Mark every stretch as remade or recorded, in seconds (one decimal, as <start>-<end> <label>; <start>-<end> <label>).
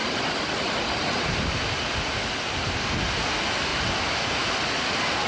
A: 0.0-5.3 recorded